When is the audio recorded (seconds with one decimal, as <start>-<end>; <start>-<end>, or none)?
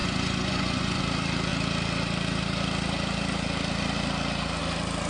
1.0-5.1